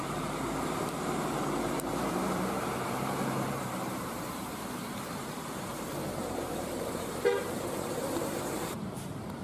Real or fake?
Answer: fake